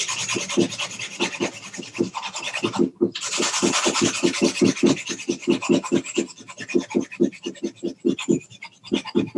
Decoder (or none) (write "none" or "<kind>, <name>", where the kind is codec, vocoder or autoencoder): none